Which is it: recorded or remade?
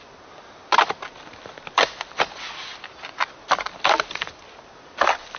recorded